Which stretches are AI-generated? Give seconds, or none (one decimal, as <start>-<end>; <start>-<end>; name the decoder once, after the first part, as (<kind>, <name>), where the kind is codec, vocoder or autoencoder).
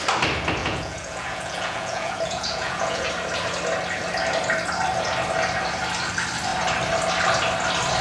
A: 0.6-3.1 (vocoder, Vocos)